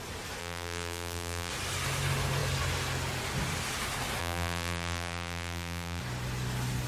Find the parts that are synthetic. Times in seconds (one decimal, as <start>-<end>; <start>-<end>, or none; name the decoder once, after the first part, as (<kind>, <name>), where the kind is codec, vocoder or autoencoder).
0.4-1.5 (vocoder, BigVGAN v2); 4.2-6.0